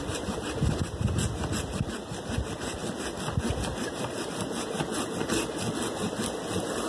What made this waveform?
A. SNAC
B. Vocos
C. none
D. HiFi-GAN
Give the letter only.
C